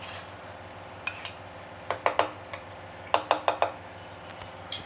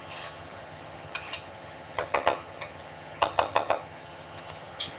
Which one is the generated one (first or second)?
second